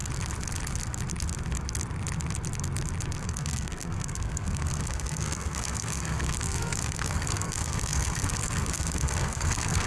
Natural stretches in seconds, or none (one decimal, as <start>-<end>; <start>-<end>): 0.0-3.2